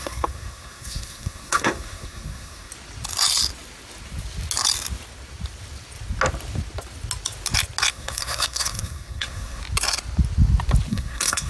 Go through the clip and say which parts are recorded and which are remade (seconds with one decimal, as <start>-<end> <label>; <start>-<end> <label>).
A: 0.0-2.7 remade; 2.7-7.9 recorded; 7.9-9.6 remade; 9.6-10.9 recorded; 10.9-11.5 remade